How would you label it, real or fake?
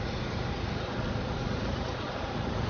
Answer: fake